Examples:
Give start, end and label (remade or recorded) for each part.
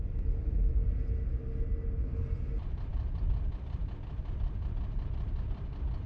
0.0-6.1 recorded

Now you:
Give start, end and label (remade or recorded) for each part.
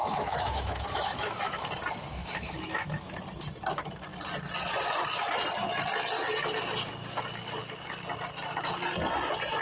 0.0-1.7 remade; 1.7-2.2 recorded; 2.2-3.1 remade; 3.1-9.6 recorded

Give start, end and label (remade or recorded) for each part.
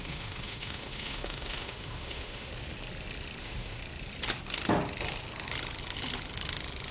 0.0-2.5 remade; 2.5-3.4 recorded; 3.4-3.8 remade; 3.8-6.9 recorded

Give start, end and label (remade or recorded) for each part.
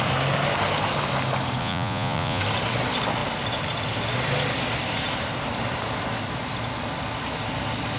0.0-1.6 recorded; 1.6-2.4 remade; 2.4-8.0 recorded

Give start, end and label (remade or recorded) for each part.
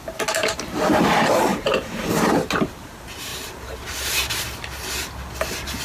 0.0-0.4 recorded; 0.4-1.0 remade; 1.0-1.5 recorded; 1.5-2.3 remade; 2.3-5.8 recorded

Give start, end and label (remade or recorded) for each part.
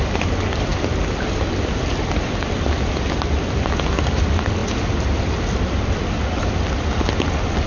0.0-7.7 recorded